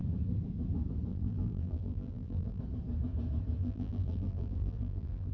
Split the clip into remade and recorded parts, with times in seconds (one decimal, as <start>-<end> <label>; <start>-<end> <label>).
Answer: 0.0-1.1 recorded; 1.1-2.6 remade; 2.6-3.6 recorded; 3.6-5.3 remade

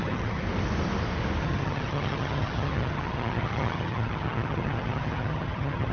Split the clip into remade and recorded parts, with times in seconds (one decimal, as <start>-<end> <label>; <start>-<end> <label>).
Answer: 0.0-0.4 remade; 0.4-1.4 recorded; 1.4-5.9 remade

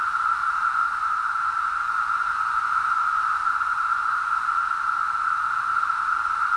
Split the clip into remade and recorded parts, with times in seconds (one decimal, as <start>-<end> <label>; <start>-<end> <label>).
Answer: 0.0-0.6 recorded; 0.6-4.5 remade; 4.5-6.6 recorded

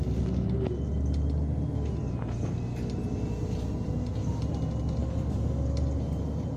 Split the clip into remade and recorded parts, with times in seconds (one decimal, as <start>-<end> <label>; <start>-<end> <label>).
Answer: 0.0-5.0 recorded; 5.0-5.6 remade; 5.6-6.6 recorded